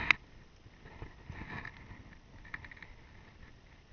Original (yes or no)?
yes